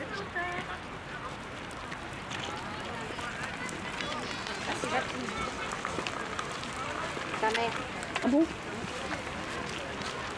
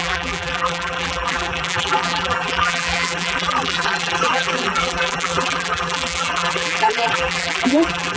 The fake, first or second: second